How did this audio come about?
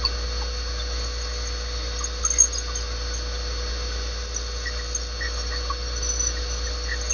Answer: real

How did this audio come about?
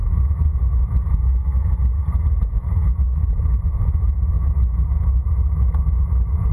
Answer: fake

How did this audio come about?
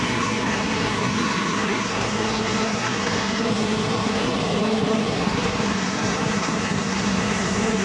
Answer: fake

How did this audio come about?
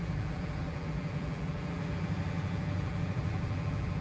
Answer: fake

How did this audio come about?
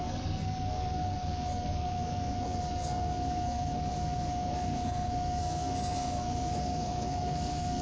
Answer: fake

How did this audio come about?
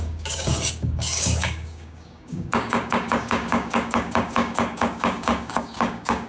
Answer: fake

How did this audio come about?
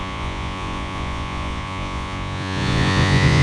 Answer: fake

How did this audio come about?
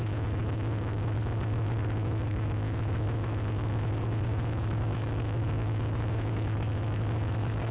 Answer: fake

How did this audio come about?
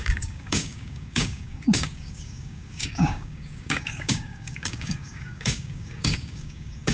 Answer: fake